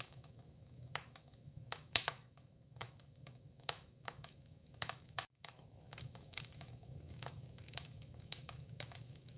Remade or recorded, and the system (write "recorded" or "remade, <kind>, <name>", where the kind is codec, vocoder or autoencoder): remade, autoencoder, DAC-VAE